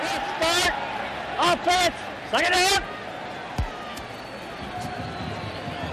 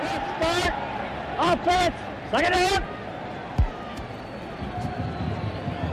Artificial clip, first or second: second